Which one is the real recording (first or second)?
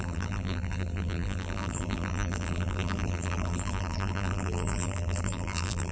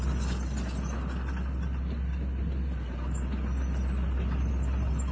second